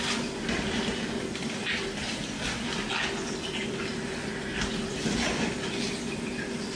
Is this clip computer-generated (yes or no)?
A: no